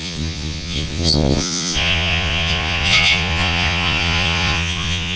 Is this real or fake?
fake